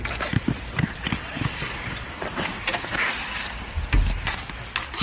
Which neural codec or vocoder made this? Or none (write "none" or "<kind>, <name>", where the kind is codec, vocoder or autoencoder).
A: none